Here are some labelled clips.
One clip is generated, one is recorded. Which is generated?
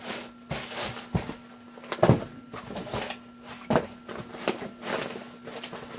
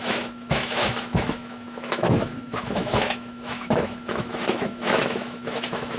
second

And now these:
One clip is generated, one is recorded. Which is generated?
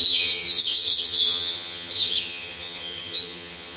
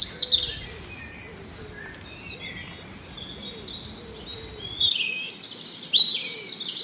first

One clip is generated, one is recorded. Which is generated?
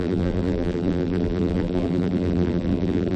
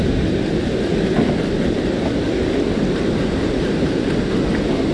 first